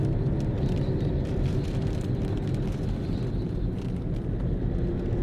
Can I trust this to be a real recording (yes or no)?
yes